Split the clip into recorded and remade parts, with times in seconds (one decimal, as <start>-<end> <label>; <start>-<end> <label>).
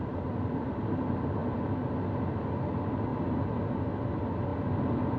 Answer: 0.0-5.2 recorded